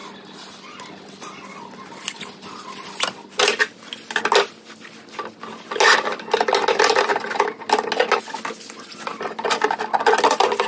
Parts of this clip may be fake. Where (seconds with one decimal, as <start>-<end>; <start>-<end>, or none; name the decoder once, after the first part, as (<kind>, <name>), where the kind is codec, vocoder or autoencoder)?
none